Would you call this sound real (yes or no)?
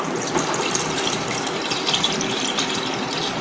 yes